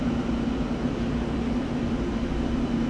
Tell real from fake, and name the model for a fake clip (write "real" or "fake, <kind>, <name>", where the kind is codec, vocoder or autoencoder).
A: real